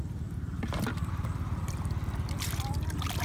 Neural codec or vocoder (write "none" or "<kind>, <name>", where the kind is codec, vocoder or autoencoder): none